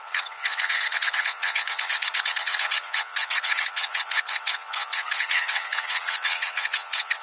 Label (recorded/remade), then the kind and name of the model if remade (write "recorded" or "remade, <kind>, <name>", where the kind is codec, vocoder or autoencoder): remade, vocoder, WaveNeXt